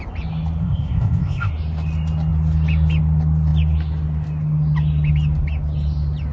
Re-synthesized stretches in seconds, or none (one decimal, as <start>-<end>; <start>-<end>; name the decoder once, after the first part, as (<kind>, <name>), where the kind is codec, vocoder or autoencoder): 0.6-1.5 (codec, ZipCodec)